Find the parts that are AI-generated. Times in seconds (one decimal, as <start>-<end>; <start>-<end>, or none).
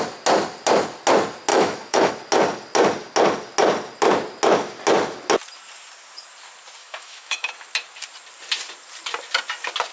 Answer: 1.5-2.1; 6.8-7.5